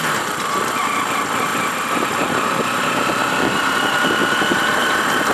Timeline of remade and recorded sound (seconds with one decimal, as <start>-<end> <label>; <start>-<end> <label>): 0.0-1.5 recorded; 1.5-3.2 remade; 3.2-5.3 recorded